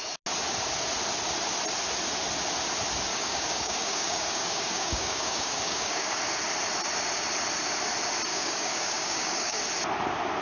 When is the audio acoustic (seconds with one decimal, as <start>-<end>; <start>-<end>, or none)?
0.0-3.1; 6.2-8.3; 9.6-10.4